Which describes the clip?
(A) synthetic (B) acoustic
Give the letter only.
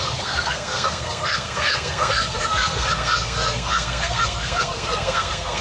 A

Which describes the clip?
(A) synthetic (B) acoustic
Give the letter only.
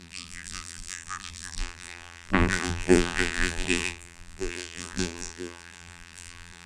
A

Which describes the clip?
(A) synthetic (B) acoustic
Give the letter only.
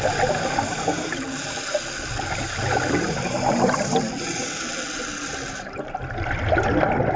B